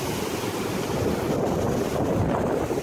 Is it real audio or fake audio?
real